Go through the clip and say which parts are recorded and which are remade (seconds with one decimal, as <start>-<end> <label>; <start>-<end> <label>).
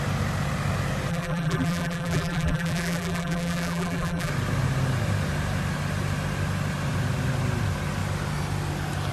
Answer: 0.0-1.1 recorded; 1.1-4.3 remade; 4.3-9.1 recorded